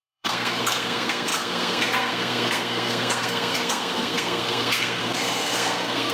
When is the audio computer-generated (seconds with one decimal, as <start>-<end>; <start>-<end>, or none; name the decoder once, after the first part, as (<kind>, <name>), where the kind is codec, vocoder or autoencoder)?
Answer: 0.0-6.1 (codec, SNAC)